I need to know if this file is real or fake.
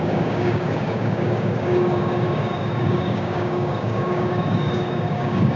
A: fake